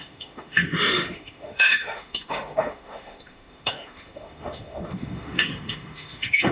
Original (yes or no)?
no